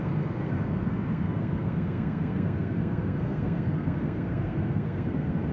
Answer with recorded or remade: remade